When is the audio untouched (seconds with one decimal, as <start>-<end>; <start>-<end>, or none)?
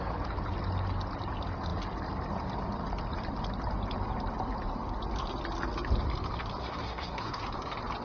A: 0.0-6.6; 7.4-8.0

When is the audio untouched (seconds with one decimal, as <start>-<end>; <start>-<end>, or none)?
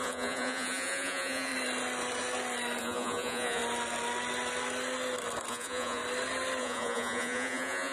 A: 1.5-2.8; 3.6-5.5; 6.0-6.6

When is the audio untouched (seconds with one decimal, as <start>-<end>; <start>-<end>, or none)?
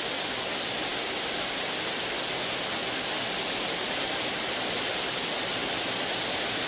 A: 0.0-6.7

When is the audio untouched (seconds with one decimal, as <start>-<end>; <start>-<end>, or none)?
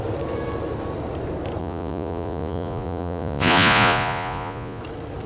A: 0.0-1.6; 4.8-5.3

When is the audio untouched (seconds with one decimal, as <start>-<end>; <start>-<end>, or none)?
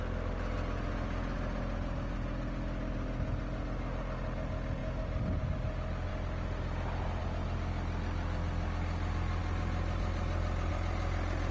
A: 0.0-11.5